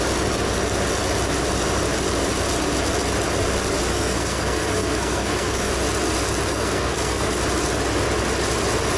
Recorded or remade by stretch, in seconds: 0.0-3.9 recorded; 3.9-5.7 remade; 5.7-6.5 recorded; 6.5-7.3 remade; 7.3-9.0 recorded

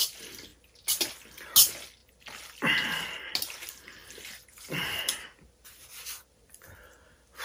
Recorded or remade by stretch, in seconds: 0.0-4.0 recorded; 4.0-7.4 remade

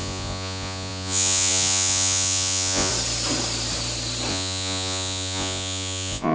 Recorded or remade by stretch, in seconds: 0.0-2.9 remade; 2.9-4.3 recorded; 4.3-6.3 remade

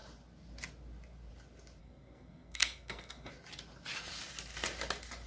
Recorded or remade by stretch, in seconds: 0.0-1.8 recorded; 1.8-3.3 remade; 3.3-5.3 recorded

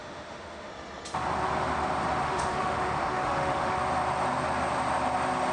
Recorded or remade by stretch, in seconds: 0.0-0.7 remade; 0.7-2.2 recorded; 2.2-3.8 remade; 3.8-5.5 recorded

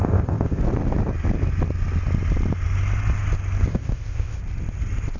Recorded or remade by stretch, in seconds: 0.0-0.6 remade; 0.6-3.7 recorded; 3.7-4.4 remade; 4.4-5.2 recorded